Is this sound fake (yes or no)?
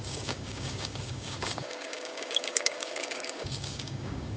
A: yes